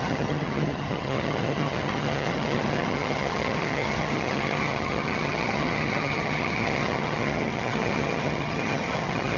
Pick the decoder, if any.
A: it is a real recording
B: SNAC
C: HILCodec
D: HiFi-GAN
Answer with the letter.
D